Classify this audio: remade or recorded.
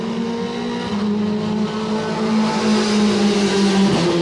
recorded